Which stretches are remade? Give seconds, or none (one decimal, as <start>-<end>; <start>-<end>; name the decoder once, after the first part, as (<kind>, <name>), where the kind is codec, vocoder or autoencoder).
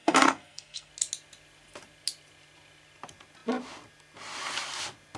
0.0-0.9 (codec, SNAC)